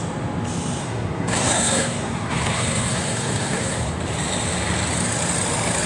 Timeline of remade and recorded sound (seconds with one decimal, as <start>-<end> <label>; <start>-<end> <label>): 0.0-0.8 recorded; 0.8-3.9 remade; 3.9-5.9 recorded